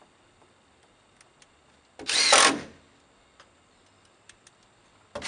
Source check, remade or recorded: recorded